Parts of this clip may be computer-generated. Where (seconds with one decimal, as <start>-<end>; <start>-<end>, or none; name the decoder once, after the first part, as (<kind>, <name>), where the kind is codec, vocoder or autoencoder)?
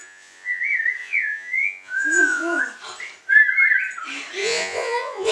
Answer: 0.0-0.6 (vocoder, Vocos); 1.0-2.6; 4.4-5.3